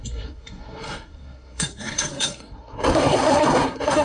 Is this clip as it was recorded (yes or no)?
no